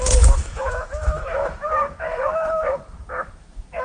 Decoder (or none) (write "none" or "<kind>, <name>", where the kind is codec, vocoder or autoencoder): autoencoder, DAC-VAE